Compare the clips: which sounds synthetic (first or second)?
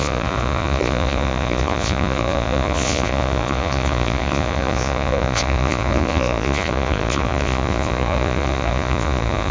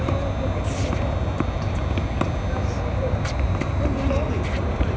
first